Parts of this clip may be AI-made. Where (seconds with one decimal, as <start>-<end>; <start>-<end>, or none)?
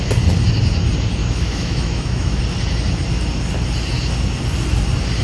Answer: 1.2-2.4